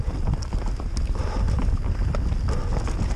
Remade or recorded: recorded